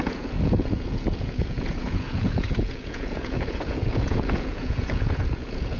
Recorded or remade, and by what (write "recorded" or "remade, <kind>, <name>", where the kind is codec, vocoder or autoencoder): remade, vocoder, Vocos